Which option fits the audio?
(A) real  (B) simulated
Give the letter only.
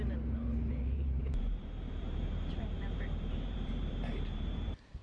B